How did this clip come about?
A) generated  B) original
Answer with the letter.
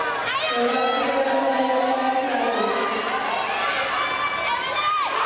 B